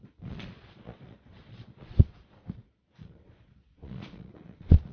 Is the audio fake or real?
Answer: fake